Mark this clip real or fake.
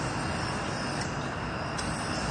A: real